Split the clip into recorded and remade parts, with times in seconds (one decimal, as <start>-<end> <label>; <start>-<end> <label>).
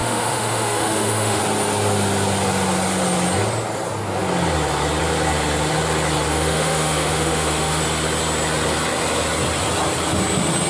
0.0-1.4 remade; 1.4-6.3 recorded; 6.3-7.8 remade; 7.8-10.7 recorded